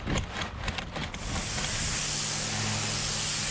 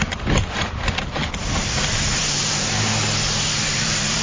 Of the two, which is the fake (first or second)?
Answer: second